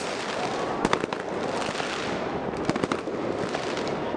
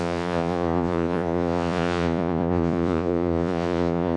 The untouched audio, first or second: first